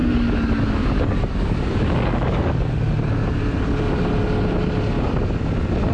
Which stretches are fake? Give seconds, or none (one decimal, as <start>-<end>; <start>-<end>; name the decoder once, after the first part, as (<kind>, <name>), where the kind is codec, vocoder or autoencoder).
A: 0.0-2.7 (codec, DAC)